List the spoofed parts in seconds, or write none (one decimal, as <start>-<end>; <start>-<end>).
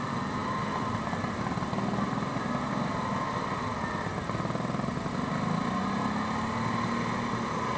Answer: none